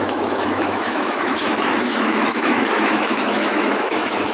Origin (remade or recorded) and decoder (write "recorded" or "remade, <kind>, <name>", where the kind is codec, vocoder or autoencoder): remade, autoencoder, DAC-VAE